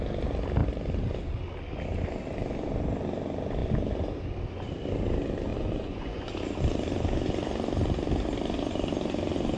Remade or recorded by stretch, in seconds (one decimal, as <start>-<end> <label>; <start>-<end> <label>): 0.0-5.5 recorded; 5.5-6.3 remade; 6.3-9.6 recorded